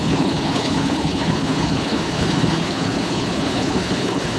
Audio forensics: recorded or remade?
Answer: remade